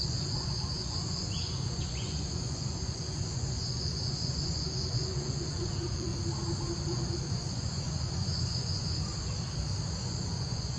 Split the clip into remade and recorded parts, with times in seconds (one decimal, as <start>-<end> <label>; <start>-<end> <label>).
0.0-6.1 remade; 6.1-6.8 recorded; 6.8-9.1 remade; 9.1-9.9 recorded; 9.9-10.8 remade